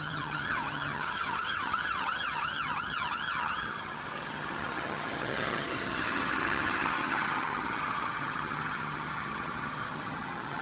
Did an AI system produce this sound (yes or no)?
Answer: yes